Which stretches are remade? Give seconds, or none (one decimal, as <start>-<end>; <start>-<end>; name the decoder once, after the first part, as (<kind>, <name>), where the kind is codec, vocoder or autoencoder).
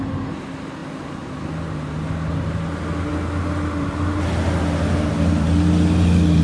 none